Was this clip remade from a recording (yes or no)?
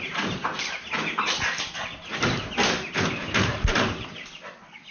no